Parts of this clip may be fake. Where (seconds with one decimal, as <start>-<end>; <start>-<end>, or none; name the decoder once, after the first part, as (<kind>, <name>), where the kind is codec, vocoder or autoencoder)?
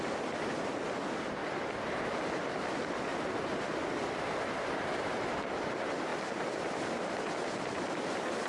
0.0-1.4 (vocoder, BigVGAN v2); 2.4-6.1